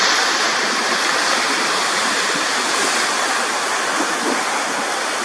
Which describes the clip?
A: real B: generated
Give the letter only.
A